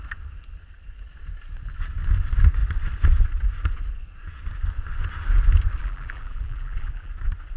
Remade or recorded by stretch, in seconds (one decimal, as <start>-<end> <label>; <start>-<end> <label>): 0.0-5.8 recorded; 5.8-7.1 remade; 7.1-7.6 recorded